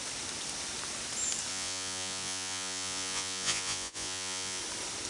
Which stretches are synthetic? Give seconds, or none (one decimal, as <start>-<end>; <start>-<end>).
1.5-4.6